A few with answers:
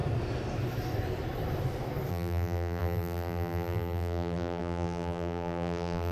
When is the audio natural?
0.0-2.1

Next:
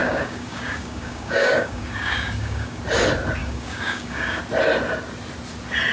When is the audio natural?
2.8-3.4; 4.4-5.9

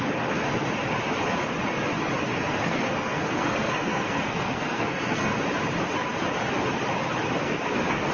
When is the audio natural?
0.0-2.3; 5.4-7.4